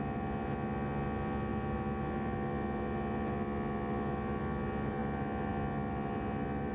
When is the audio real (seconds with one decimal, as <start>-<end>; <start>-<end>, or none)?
0.0-6.7